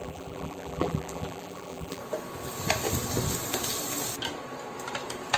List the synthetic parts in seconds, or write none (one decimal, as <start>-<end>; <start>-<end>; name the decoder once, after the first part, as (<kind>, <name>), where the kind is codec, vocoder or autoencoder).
0.0-2.0 (vocoder, BigVGAN v2)